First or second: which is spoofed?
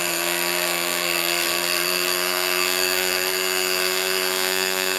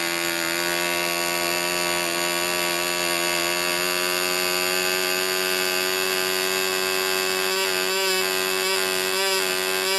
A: first